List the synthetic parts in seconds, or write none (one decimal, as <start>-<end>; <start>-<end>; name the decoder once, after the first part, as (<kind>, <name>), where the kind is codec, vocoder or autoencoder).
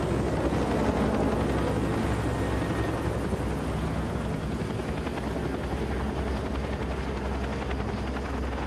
none